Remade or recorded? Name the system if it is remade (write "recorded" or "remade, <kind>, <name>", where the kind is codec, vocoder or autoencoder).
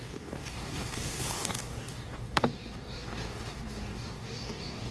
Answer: remade, codec, DAC